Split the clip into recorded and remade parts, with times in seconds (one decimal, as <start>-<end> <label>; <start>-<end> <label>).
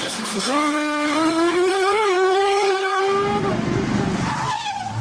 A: 0.0-3.0 remade; 3.0-5.0 recorded